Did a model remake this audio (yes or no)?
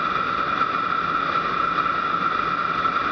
no